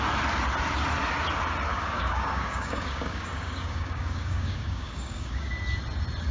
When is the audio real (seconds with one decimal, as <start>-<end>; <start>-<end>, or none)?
0.0-1.7; 5.5-6.3